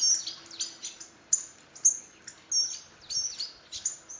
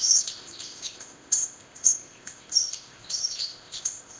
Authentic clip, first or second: first